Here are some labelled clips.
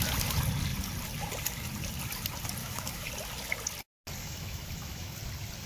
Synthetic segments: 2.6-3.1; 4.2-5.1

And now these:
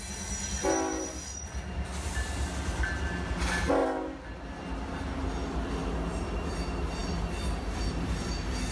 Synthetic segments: none

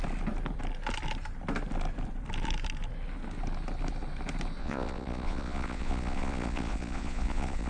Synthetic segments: 4.6-7.7

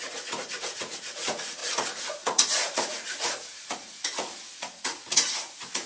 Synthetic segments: 0.0-5.9

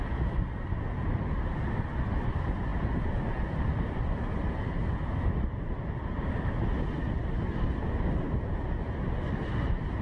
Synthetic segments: none

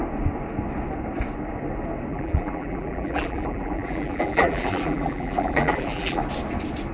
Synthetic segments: 2.1-6.2

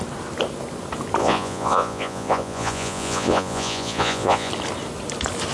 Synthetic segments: 1.2-4.5

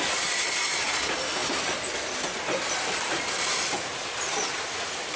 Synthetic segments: 0.0-5.2